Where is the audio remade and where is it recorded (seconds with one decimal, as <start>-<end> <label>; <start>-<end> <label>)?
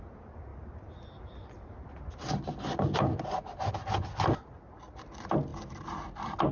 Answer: 0.0-6.5 recorded